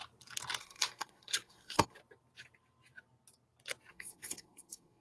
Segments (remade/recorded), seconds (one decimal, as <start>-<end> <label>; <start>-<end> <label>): 0.0-0.6 recorded; 0.6-2.0 remade; 2.0-3.9 recorded; 3.9-5.0 remade